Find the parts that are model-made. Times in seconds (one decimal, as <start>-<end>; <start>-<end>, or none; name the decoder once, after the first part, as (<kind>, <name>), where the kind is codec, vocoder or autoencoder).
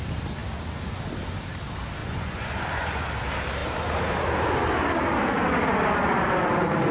2.0-3.1 (vocoder, Vocos)